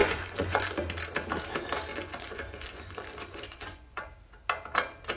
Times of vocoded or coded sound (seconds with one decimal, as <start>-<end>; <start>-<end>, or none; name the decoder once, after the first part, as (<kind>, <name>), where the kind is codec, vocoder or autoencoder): 0.0-0.8 (vocoder, Vocos); 1.9-4.1